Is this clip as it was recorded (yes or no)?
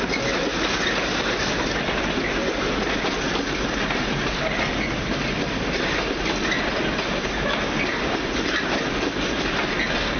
yes